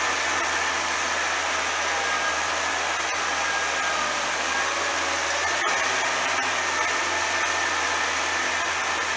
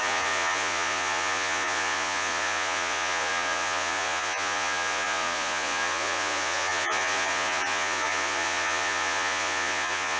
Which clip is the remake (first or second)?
second